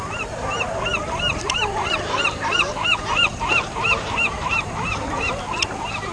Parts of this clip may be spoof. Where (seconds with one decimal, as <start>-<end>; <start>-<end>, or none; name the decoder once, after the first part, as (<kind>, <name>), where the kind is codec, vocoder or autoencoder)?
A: 1.0-1.9 (vocoder, BigVGAN v2); 3.3-4.9